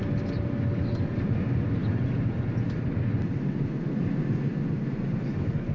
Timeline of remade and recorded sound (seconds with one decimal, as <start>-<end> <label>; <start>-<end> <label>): 0.0-5.7 recorded